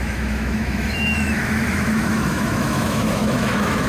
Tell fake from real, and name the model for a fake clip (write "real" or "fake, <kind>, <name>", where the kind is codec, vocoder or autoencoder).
fake, autoencoder, DAC-VAE